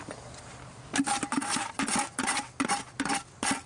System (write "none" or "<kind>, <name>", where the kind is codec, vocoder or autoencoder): none